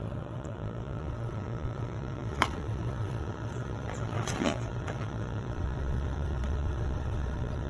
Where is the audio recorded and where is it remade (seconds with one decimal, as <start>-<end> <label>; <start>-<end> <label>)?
0.0-7.7 remade